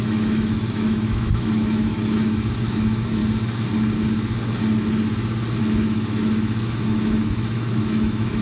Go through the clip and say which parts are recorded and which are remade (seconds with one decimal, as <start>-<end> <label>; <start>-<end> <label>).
0.0-3.2 remade; 3.2-5.6 recorded; 5.6-8.4 remade